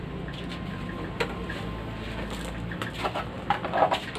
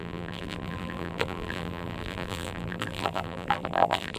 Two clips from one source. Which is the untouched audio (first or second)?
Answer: first